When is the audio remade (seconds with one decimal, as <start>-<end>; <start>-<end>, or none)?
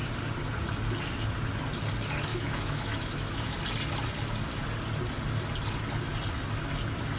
2.3-3.6